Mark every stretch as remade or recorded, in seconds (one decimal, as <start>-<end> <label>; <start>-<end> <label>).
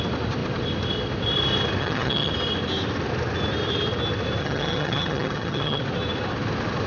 0.0-1.8 recorded; 1.8-2.3 remade; 2.3-4.4 recorded; 4.4-5.8 remade; 5.8-6.9 recorded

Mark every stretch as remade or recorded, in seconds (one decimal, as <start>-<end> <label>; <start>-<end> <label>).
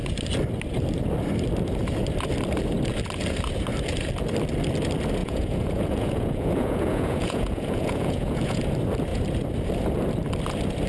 0.0-5.2 recorded; 5.2-8.6 remade; 8.6-10.9 recorded